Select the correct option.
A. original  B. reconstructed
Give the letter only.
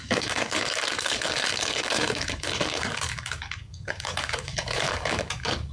B